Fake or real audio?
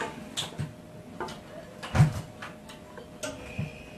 real